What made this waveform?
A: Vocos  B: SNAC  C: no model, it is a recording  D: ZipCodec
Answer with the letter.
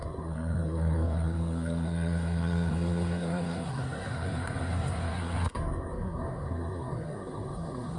B